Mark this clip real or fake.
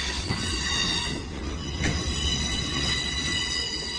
fake